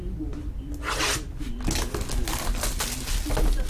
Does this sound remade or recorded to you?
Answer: recorded